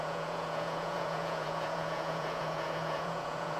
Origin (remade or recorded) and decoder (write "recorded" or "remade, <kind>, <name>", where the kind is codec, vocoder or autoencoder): remade, vocoder, Vocos